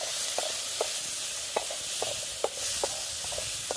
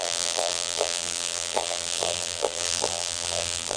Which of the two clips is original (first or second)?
first